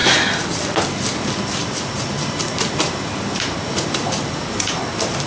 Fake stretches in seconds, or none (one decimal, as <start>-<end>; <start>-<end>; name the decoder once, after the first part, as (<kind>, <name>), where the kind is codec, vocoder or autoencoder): 1.6-4.8 (vocoder, BigVGAN v2)